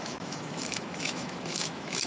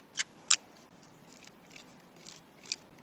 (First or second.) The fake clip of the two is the first